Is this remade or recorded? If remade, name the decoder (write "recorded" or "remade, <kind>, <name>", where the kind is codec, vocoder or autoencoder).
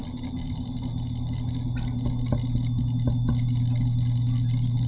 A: recorded